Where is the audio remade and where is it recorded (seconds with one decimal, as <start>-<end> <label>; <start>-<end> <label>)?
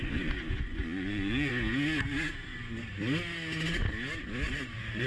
0.0-1.5 remade; 1.5-4.5 recorded; 4.5-5.1 remade